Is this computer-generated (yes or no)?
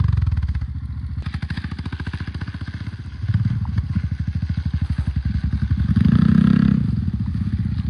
no